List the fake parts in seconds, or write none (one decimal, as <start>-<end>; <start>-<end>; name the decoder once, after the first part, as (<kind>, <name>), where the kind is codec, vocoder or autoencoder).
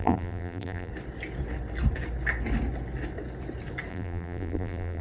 0.0-0.9 (vocoder, BigVGAN v2); 3.9-5.0